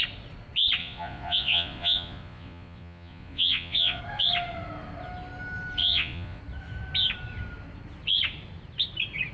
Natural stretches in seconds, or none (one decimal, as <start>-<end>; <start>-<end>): 0.0-0.8; 4.0-5.8; 6.4-9.3